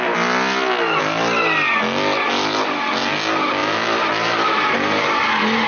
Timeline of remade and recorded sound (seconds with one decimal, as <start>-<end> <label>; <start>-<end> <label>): 0.0-5.7 recorded